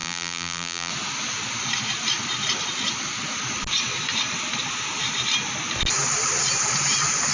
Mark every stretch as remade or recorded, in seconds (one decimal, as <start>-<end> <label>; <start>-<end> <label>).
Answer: 0.0-0.9 remade; 0.9-7.3 recorded